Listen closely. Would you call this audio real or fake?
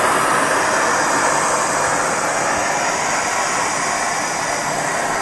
real